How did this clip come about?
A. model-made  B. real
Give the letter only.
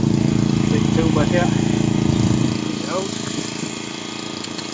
B